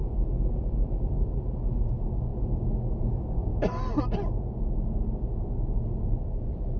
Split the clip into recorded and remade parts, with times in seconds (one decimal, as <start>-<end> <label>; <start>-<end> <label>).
0.0-0.6 recorded; 0.6-2.3 remade; 2.3-3.0 recorded; 3.0-3.5 remade; 3.5-6.8 recorded